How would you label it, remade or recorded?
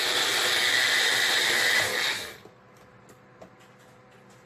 recorded